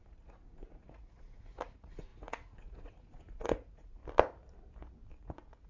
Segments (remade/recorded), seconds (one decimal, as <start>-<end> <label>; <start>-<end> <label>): 0.0-4.0 remade; 4.0-5.2 recorded; 5.2-5.7 remade